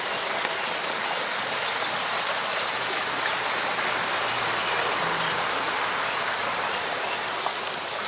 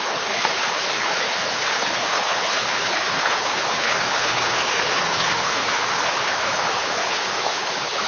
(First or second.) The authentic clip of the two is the first